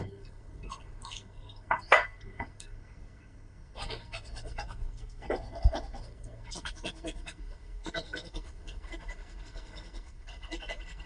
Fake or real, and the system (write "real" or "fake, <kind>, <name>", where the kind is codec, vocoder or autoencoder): fake, codec, SNAC